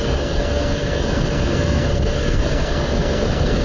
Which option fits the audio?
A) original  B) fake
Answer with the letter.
B